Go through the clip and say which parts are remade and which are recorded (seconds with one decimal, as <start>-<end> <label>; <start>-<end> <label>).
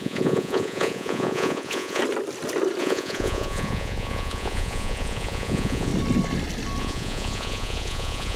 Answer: 0.0-2.0 remade; 2.0-2.8 recorded; 2.8-5.9 remade; 5.9-6.8 recorded; 6.8-8.4 remade